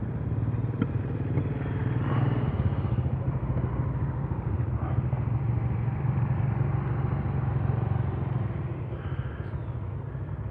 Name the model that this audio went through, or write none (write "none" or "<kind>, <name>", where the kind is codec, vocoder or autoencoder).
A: none